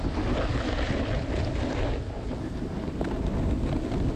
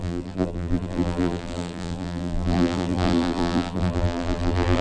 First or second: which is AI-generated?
second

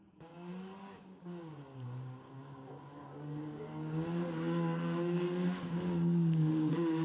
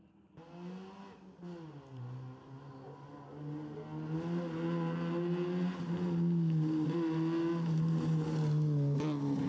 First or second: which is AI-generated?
first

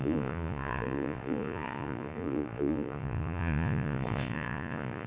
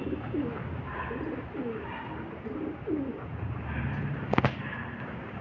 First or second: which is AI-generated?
first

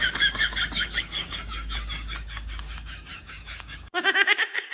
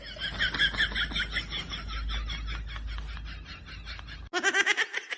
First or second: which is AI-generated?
first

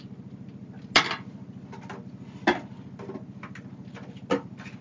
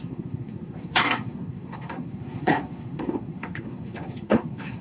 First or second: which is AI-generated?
second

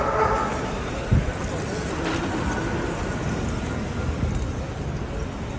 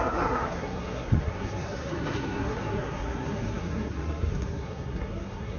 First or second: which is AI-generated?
second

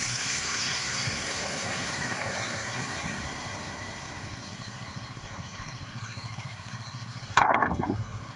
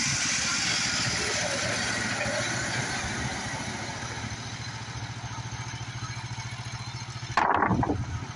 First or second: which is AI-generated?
first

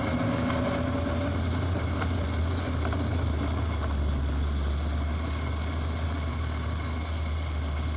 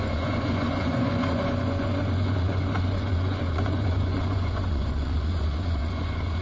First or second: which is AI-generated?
second